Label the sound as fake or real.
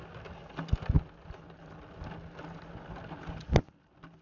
real